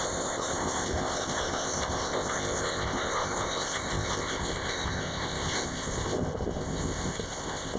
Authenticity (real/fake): fake